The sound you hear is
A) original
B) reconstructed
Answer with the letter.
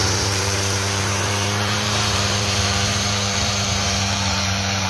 B